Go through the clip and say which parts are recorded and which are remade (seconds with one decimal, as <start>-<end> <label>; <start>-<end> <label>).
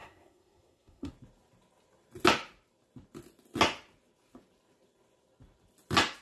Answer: 0.0-1.1 remade; 1.1-6.2 recorded